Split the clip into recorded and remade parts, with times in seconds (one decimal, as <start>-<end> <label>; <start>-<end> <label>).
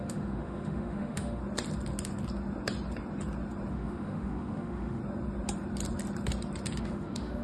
0.0-1.4 remade; 1.4-3.7 recorded; 3.7-5.0 remade; 5.0-6.8 recorded; 6.8-7.4 remade